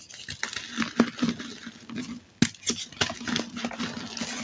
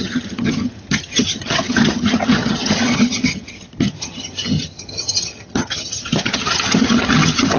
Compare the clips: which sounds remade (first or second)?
second